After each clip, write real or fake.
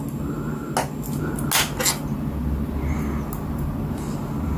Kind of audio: real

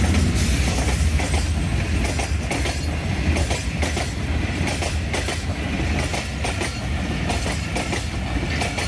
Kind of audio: real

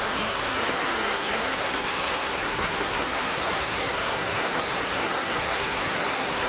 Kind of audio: fake